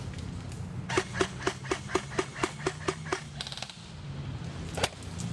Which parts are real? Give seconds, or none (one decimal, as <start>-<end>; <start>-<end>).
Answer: 0.0-5.3